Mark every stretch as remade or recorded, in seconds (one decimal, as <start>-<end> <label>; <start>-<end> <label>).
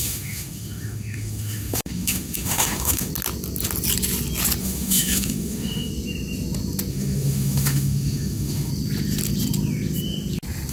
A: 0.0-3.1 remade; 3.1-4.6 recorded; 4.6-5.9 remade; 5.9-6.9 recorded; 6.9-8.7 remade; 8.7-10.7 recorded